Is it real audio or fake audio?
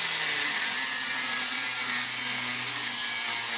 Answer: real